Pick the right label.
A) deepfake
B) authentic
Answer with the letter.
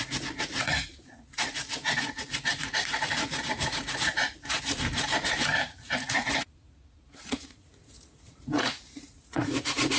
A